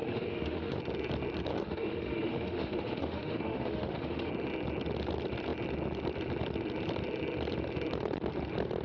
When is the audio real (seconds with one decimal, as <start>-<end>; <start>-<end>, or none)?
0.8-1.5; 4.3-8.8